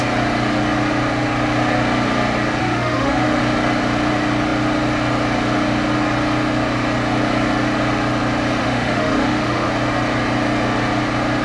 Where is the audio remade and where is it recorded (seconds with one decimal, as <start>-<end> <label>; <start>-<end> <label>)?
0.0-2.6 recorded; 2.6-3.4 remade; 3.4-8.6 recorded; 8.6-9.7 remade; 9.7-11.4 recorded